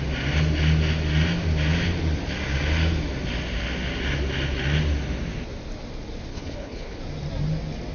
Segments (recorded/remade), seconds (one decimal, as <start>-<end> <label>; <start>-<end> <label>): 0.0-6.3 recorded; 6.3-7.0 remade; 7.0-7.9 recorded